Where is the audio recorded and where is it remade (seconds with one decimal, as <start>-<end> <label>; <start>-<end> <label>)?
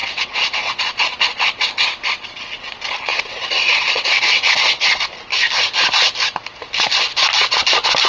0.0-0.8 remade; 0.8-3.1 recorded; 3.1-5.1 remade; 5.1-8.1 recorded